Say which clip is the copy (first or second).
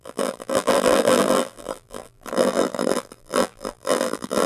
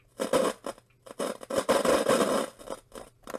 first